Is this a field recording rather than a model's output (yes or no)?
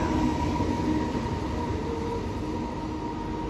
yes